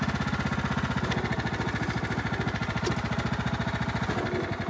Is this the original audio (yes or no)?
yes